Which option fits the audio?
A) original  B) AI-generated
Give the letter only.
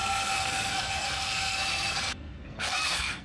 B